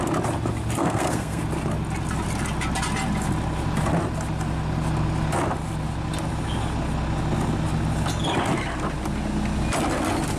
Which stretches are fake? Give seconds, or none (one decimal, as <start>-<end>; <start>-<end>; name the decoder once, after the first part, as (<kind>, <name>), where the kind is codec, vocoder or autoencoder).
0.8-1.4 (codec, SNAC)